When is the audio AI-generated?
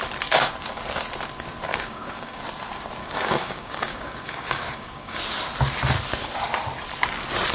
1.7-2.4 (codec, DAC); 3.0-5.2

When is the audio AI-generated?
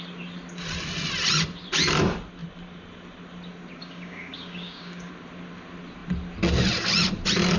3.8-5.1 (codec, DAC)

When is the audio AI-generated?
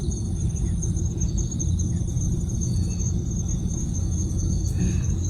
3.8-5.3 (codec, DAC)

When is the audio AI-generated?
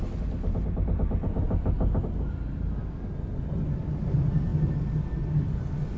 none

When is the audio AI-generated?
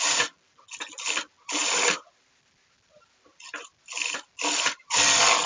none